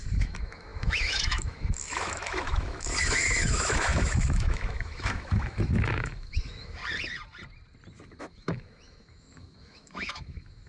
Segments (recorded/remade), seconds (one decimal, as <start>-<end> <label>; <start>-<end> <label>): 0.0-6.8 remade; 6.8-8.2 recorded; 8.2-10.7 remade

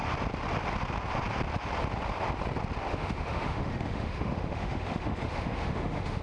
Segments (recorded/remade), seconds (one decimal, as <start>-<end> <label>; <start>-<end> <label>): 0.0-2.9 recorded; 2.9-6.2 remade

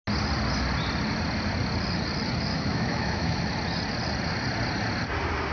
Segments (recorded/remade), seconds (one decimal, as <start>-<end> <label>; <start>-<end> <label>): 0.0-2.5 recorded; 2.5-3.4 remade; 3.4-5.5 recorded